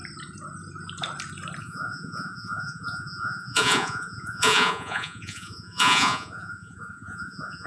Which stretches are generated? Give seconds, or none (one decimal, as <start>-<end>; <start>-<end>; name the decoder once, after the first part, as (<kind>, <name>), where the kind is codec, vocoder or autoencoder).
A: 1.6-7.7 (vocoder, Vocos)